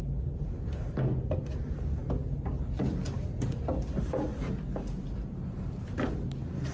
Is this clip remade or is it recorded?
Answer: recorded